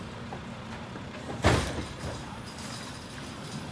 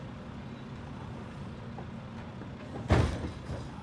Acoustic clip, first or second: second